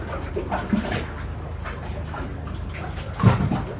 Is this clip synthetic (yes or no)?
no